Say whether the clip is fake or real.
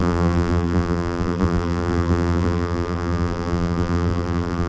fake